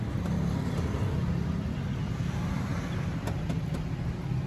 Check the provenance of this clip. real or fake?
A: real